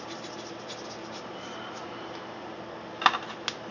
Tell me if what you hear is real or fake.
real